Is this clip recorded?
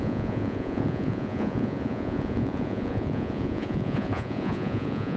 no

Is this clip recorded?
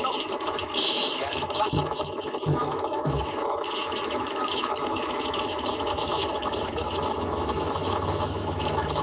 no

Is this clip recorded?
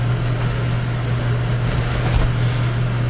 yes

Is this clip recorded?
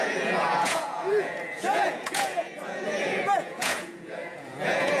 no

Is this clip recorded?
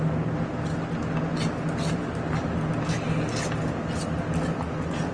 yes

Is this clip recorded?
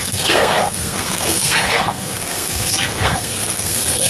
no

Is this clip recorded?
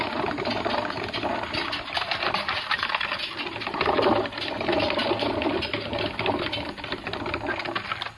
yes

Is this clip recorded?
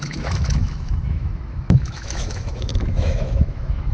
no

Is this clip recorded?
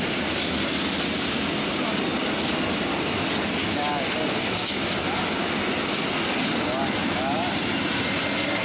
yes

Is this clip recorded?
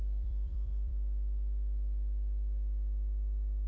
no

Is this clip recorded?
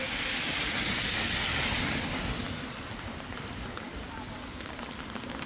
yes